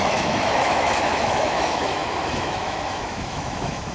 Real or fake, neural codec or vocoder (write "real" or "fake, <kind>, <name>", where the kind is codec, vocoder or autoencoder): fake, autoencoder, DAC-VAE